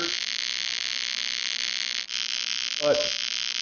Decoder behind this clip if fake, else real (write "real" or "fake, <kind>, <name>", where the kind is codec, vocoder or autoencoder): real